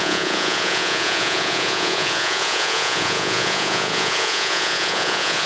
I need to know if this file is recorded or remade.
remade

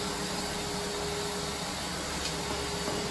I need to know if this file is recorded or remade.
recorded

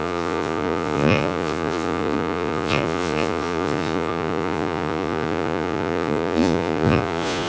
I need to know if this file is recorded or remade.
remade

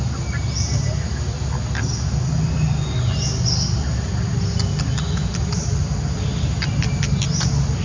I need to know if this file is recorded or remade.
recorded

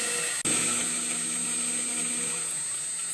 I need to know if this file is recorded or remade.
recorded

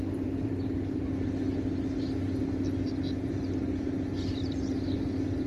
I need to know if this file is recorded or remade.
recorded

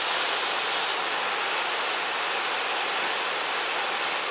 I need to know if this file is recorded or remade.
recorded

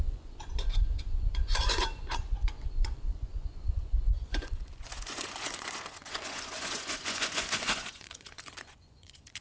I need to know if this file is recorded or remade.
remade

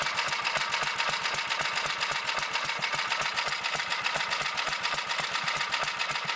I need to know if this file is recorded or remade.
recorded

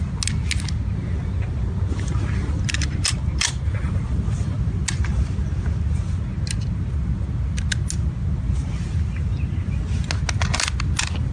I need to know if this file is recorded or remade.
recorded